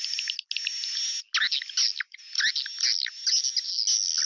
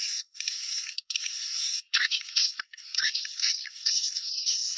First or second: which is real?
first